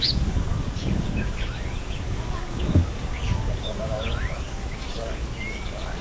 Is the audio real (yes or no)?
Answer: no